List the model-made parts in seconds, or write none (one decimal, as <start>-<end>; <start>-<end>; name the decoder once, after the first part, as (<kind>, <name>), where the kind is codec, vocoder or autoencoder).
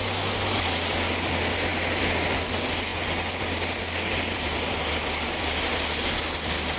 none